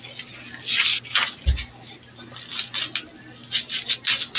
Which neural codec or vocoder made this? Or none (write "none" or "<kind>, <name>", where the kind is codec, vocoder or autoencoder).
none